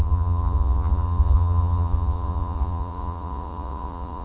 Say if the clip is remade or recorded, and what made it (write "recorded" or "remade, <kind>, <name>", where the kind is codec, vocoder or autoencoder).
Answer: remade, vocoder, Vocos